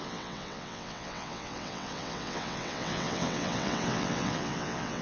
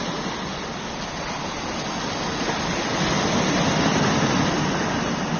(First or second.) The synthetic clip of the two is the first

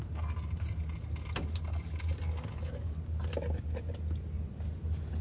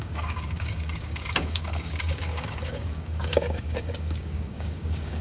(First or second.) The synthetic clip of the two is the second